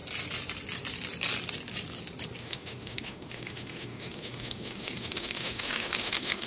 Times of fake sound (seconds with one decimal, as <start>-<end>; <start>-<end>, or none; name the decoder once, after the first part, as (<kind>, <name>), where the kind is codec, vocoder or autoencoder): 2.4-6.5 (autoencoder, DAC-VAE)